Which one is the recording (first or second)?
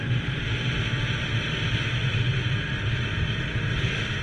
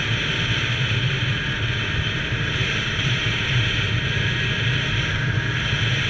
first